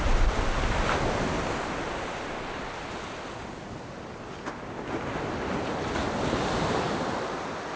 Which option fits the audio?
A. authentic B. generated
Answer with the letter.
A